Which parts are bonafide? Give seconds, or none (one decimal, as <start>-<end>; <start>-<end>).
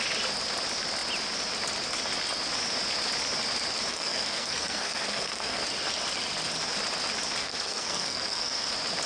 0.0-3.9; 5.6-7.4; 8.7-9.1